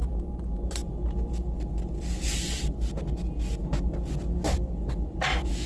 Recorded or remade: recorded